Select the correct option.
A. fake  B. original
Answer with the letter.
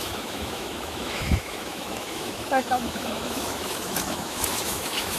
A